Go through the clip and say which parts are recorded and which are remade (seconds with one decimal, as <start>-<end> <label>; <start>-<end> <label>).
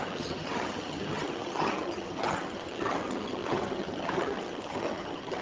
0.0-5.4 remade